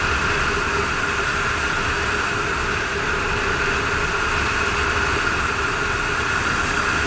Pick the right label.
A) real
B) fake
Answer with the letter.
A